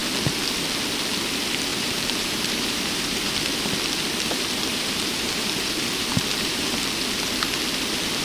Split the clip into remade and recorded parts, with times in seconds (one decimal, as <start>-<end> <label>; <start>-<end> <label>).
0.0-1.7 recorded; 1.7-3.5 remade; 3.5-4.7 recorded; 4.7-6.7 remade; 6.7-8.2 recorded